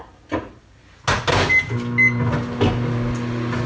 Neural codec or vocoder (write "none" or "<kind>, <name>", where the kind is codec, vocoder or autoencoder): none